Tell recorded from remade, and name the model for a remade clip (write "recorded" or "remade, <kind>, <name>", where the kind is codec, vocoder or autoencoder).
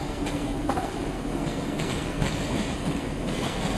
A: remade, codec, SNAC